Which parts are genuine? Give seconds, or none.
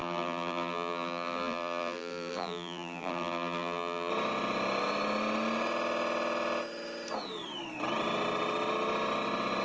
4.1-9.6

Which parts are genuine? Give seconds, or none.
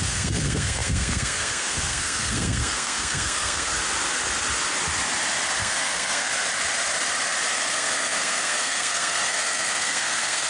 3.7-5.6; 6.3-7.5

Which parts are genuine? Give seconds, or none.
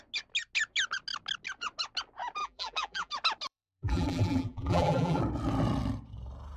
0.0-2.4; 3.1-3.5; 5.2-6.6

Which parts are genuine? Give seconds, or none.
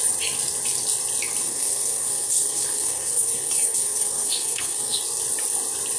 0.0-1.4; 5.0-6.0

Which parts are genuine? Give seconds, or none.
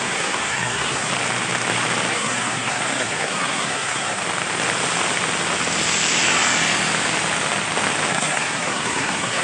1.1-2.1; 4.2-8.1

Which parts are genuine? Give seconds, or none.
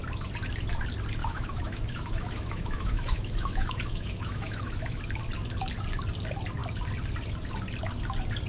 0.0-1.2; 5.0-8.5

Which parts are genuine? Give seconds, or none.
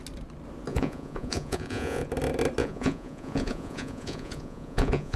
0.0-0.7; 2.1-2.6